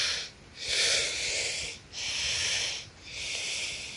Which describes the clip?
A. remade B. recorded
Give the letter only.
B